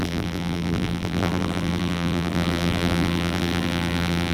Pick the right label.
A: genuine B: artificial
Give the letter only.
B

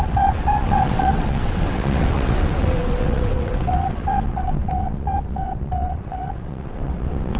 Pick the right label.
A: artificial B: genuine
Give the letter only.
A